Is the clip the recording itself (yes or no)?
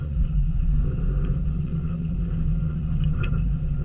no